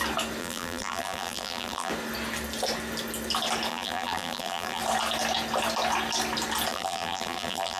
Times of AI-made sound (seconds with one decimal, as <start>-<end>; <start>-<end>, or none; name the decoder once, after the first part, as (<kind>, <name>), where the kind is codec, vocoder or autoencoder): 0.4-1.9 (vocoder, BigVGAN v2); 3.7-4.8; 6.7-7.8